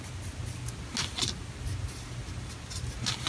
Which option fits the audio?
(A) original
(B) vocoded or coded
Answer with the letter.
A